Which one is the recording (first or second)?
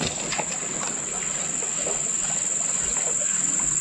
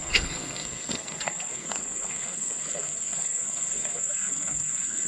first